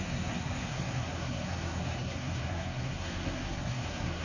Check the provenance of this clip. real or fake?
fake